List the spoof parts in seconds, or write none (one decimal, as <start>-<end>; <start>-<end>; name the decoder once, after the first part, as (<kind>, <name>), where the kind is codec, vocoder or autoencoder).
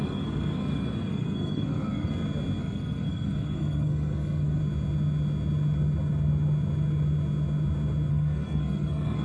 0.0-2.1 (codec, SNAC); 2.6-4.6; 8.1-9.2